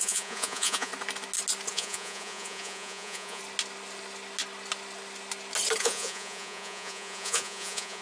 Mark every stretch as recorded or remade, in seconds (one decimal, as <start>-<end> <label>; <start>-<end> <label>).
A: 0.0-0.9 remade; 0.9-1.7 recorded; 1.7-3.4 remade; 3.4-5.8 recorded; 5.8-8.0 remade